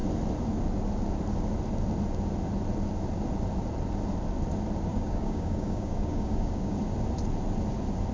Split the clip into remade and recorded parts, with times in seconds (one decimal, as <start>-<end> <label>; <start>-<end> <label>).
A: 0.0-4.9 recorded; 4.9-6.8 remade; 6.8-8.1 recorded